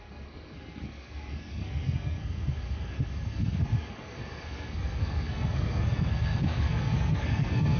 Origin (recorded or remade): remade